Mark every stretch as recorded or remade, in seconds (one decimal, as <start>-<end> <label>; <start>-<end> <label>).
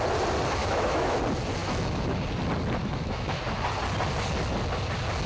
0.0-0.6 recorded; 0.6-1.2 remade; 1.2-1.6 recorded; 1.6-2.2 remade; 2.2-2.8 recorded; 2.8-3.4 remade; 3.4-5.3 recorded